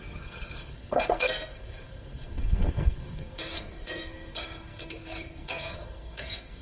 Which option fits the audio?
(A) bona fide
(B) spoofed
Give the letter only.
B